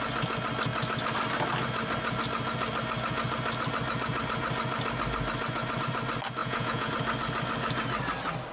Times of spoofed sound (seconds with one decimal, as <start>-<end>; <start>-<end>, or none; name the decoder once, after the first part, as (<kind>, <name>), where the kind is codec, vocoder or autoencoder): 6.4-6.9 (vocoder, Vocos)